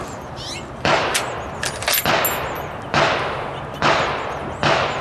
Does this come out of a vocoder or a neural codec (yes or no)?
no